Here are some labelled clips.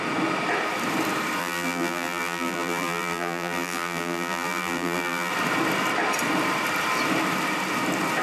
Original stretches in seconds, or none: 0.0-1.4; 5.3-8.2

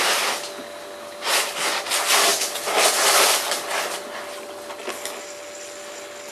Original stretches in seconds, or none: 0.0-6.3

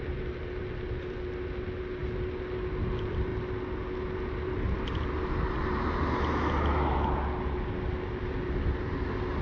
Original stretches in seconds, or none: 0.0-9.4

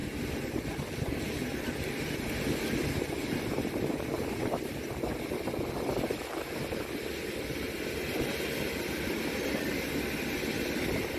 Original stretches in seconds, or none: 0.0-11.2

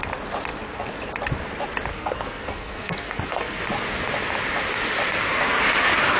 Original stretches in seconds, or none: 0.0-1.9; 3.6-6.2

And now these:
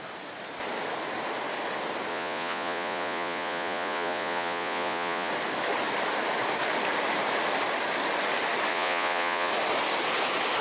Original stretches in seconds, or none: 0.0-2.1; 5.3-8.7; 9.5-10.6

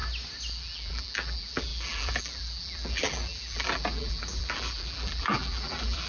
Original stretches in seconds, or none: 0.0-0.5

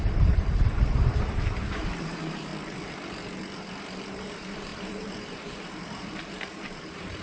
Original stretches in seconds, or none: 2.5-4.1